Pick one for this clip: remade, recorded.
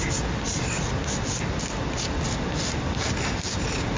recorded